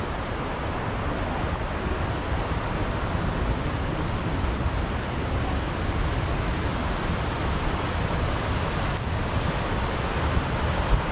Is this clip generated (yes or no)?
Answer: no